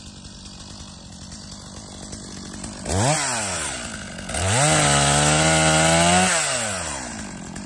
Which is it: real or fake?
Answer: real